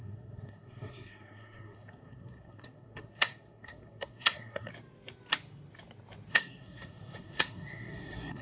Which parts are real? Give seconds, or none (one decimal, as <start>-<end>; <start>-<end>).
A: 4.7-6.3